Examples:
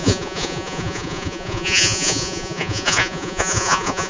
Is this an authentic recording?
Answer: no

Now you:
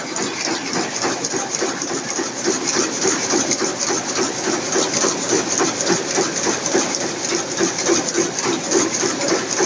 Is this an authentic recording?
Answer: yes